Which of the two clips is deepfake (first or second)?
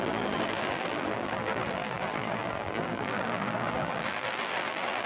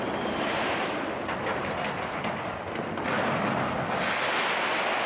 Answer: first